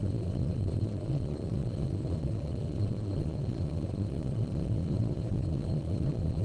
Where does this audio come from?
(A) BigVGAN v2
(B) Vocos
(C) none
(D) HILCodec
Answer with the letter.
B